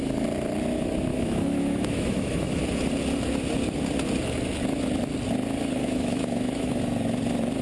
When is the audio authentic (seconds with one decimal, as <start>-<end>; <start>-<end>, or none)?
0.0-1.1; 2.6-5.8; 6.8-7.6